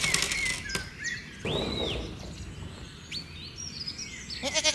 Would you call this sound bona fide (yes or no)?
yes